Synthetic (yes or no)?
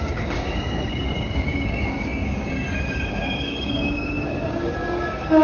yes